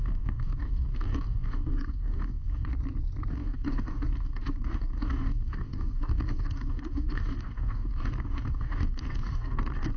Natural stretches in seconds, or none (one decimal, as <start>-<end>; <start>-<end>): 2.7-3.3